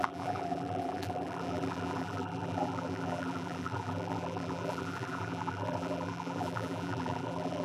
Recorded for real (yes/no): no